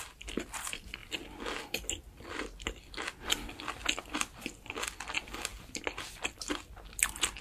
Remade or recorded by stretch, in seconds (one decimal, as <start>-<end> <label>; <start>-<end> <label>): 0.0-7.4 recorded